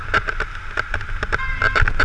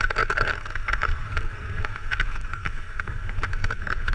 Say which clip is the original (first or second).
first